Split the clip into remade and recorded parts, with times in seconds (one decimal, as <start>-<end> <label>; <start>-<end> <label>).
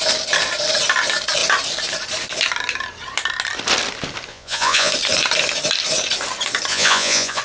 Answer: 0.0-4.3 recorded; 4.3-4.9 remade; 4.9-6.7 recorded; 6.7-7.4 remade